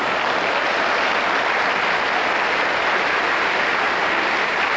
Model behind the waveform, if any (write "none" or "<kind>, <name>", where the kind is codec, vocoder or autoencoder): none